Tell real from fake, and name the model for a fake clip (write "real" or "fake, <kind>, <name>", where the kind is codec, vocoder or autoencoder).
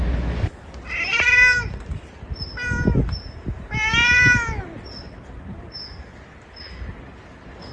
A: real